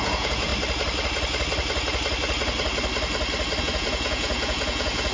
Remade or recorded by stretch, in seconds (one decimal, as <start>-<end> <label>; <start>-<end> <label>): 0.0-0.5 remade; 0.5-3.6 recorded; 3.6-5.1 remade